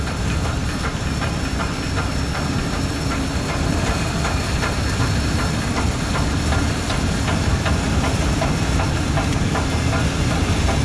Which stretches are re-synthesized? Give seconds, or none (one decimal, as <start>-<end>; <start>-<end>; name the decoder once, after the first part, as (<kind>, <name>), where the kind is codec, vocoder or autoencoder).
none